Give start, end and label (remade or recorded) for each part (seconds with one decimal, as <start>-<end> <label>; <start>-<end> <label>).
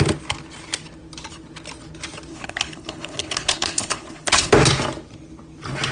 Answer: 0.0-2.3 recorded; 2.3-4.5 remade; 4.5-5.9 recorded